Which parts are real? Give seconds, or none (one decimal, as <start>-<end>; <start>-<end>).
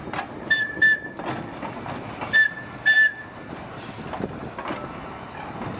0.0-5.8